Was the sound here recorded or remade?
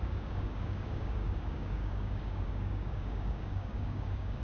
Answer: remade